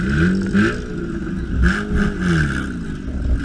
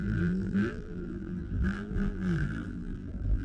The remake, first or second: second